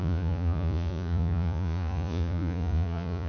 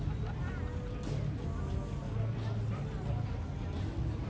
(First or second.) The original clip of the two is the second